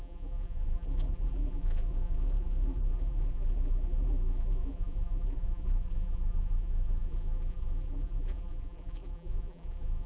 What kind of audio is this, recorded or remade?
remade